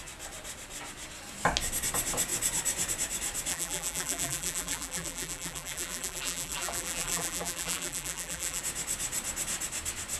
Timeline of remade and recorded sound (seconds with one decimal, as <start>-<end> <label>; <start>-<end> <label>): 0.0-3.5 recorded; 3.5-8.6 remade; 8.6-10.2 recorded